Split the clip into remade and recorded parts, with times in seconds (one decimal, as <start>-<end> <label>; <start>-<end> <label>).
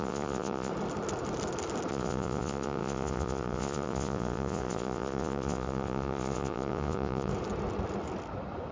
0.0-0.7 remade; 0.7-1.9 recorded; 1.9-7.3 remade; 7.3-8.7 recorded